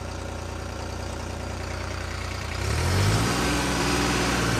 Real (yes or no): no